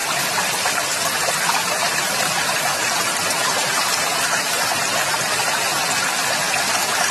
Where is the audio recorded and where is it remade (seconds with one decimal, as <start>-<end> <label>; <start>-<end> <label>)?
0.0-0.9 remade; 0.9-1.6 recorded; 1.6-5.9 remade; 5.9-7.1 recorded